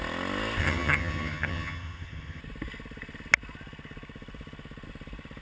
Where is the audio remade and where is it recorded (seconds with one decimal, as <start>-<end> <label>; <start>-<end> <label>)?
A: 0.0-0.6 recorded; 0.6-2.4 remade; 2.4-5.4 recorded